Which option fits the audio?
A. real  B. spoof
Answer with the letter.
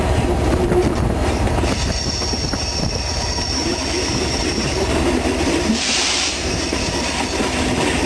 B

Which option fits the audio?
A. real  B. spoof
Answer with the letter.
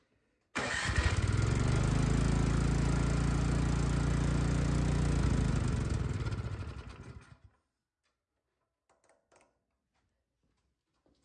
A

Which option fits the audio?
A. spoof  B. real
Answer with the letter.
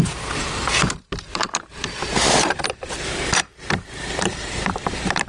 A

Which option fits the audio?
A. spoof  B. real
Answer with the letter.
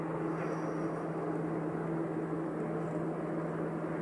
B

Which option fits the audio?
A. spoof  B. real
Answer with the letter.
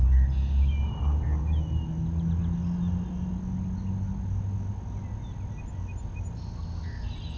B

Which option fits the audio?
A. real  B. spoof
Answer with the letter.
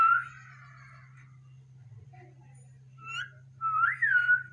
B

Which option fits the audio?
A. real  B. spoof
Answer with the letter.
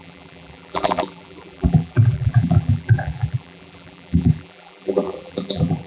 B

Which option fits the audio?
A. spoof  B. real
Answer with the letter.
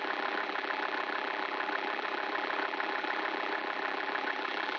A